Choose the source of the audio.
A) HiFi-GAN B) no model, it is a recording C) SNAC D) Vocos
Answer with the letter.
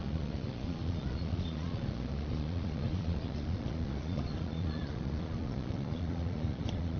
D